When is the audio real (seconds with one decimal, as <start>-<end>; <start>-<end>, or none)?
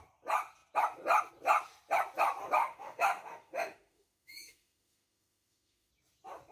0.0-2.6; 5.9-6.5